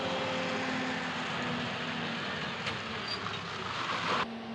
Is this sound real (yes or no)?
yes